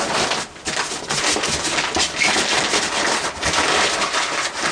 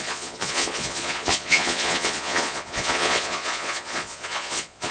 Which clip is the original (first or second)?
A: first